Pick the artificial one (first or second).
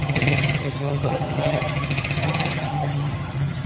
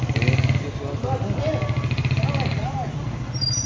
first